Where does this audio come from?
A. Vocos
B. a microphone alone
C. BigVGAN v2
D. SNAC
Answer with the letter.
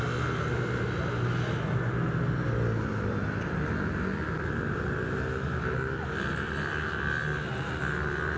B